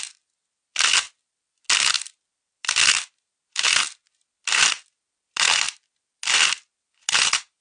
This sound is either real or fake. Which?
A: real